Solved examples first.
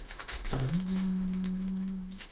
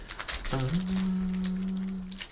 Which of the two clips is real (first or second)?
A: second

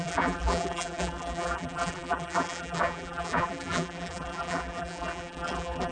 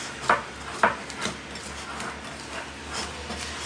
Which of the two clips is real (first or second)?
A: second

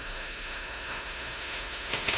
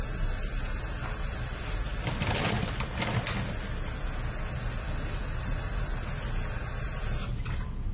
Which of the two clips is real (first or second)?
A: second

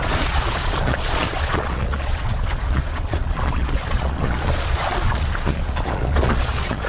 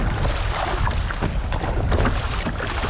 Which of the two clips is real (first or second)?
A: second